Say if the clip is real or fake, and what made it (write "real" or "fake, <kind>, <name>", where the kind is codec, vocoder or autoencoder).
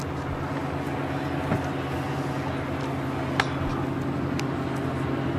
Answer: real